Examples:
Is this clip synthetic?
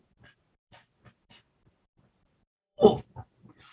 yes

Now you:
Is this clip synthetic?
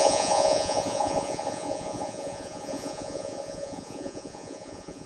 yes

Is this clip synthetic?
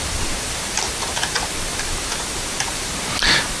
yes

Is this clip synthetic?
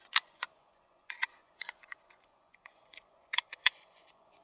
yes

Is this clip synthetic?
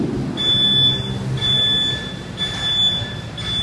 no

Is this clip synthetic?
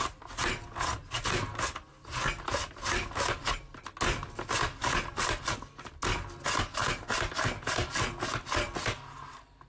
no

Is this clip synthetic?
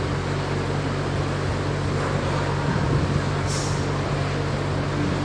no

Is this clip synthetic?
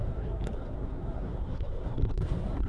yes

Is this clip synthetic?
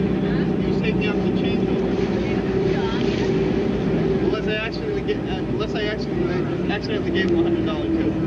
no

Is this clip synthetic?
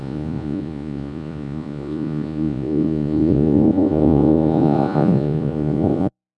yes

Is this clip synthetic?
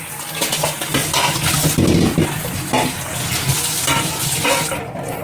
no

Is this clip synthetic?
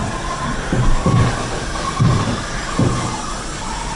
no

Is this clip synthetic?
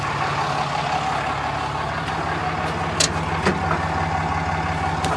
no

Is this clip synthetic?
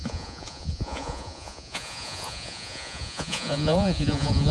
yes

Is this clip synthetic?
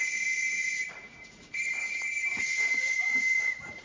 yes